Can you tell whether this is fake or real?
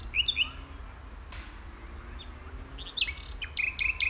real